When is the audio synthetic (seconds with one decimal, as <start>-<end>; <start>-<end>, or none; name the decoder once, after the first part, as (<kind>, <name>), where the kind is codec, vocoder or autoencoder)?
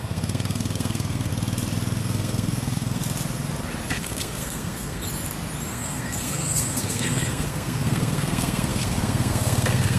0.0-1.3 (codec, SNAC); 2.0-3.0; 4.0-5.0; 5.7-10.0